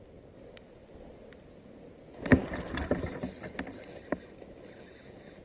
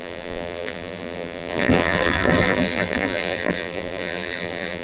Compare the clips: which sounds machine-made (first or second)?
second